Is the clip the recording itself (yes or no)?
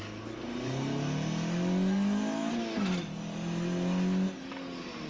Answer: yes